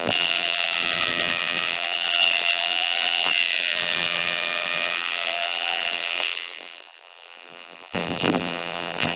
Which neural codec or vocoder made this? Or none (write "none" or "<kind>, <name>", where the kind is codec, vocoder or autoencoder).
vocoder, BigVGAN v2